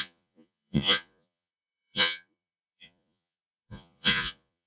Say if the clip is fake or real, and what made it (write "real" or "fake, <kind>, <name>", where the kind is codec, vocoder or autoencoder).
fake, vocoder, Vocos